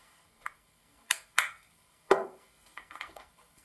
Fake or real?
fake